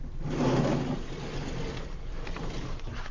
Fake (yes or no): no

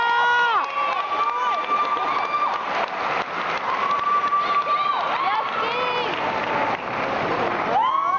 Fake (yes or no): no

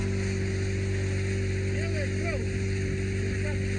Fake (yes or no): no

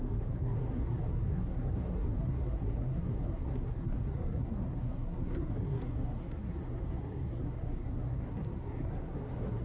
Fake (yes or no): yes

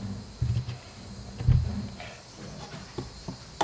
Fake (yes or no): no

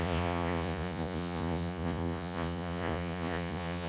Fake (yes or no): yes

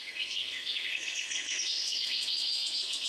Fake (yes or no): yes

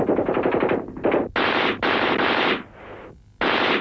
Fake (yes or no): no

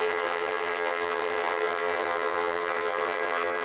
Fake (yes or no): yes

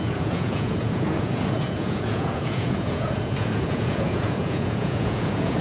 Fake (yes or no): yes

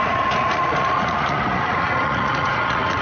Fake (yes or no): yes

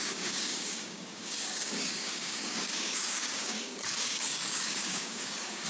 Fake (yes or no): yes